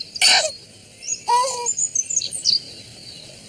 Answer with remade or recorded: recorded